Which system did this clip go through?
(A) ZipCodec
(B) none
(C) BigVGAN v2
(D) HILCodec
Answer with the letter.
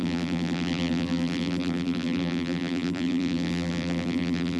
C